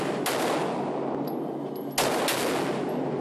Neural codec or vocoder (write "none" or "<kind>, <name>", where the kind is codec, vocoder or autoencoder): none